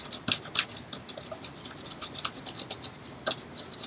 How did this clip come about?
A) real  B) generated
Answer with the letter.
A